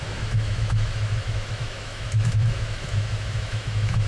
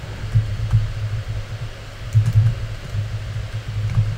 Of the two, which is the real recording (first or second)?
second